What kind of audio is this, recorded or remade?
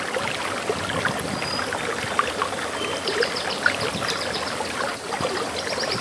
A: recorded